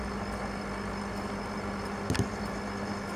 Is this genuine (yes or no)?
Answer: yes